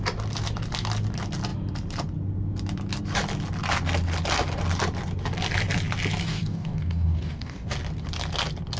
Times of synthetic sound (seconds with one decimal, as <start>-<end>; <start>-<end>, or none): 6.2-7.7